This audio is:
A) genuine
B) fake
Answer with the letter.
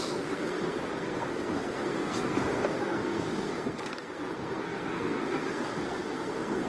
B